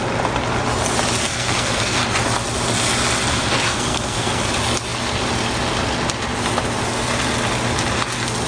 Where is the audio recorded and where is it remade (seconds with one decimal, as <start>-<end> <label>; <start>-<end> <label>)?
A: 0.0-1.2 recorded; 1.2-2.0 remade; 2.0-3.3 recorded; 3.3-4.4 remade; 4.4-8.5 recorded